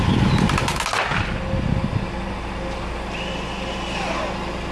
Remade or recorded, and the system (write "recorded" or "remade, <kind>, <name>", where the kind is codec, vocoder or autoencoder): recorded